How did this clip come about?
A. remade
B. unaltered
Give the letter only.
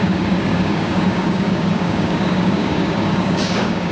A